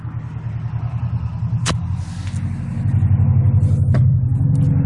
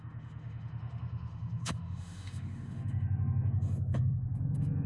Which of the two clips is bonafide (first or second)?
first